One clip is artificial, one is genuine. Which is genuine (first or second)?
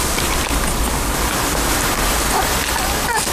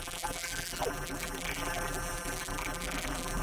first